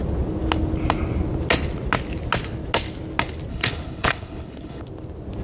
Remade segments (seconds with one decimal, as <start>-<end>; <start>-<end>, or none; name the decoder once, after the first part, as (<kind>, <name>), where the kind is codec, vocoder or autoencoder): 3.5-4.8 (codec, HILCodec)